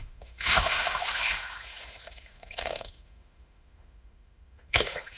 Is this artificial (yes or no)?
yes